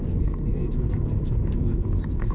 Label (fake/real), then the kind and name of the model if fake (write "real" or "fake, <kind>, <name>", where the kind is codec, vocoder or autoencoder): fake, codec, SNAC